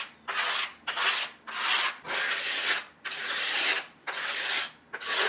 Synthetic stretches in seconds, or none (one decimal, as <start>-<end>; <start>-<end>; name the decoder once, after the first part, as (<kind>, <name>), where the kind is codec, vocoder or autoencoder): none